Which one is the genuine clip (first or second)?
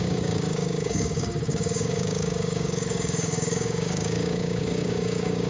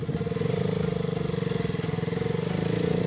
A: second